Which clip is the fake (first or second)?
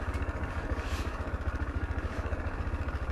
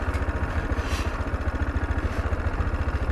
first